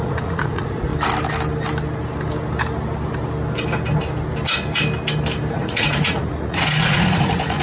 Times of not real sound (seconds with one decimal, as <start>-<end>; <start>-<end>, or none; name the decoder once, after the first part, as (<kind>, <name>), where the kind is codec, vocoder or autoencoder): 0.0-0.9 (vocoder, Vocos); 5.5-7.6